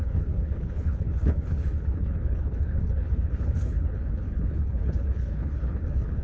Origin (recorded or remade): remade